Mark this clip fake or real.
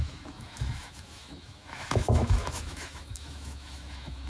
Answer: fake